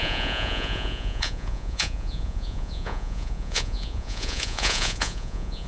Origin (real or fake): fake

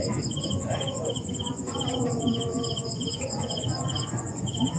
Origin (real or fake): fake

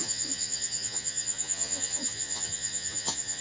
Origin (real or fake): fake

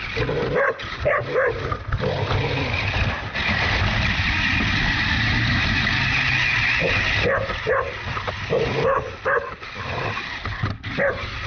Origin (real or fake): real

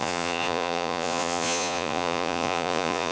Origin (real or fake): fake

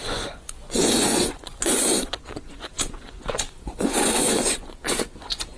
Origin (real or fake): fake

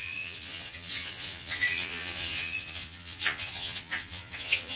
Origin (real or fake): fake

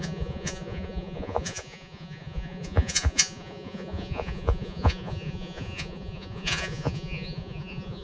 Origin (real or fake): fake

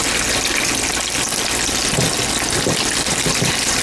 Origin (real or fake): real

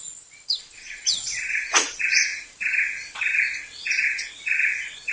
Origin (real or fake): fake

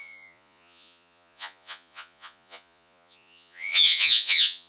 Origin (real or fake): fake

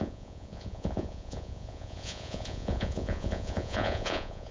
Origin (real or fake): fake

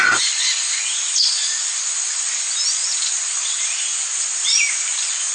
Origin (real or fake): real